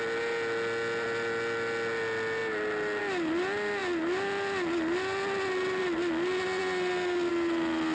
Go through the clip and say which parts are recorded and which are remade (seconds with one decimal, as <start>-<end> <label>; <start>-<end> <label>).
0.0-7.9 recorded